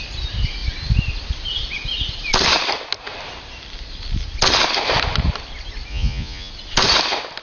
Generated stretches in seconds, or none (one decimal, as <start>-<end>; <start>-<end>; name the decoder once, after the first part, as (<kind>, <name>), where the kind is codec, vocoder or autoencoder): 5.9-6.5 (vocoder, Vocos)